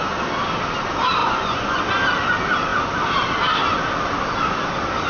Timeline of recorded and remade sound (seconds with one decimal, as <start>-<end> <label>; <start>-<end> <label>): 0.0-1.2 recorded; 1.2-1.8 remade; 1.8-5.1 recorded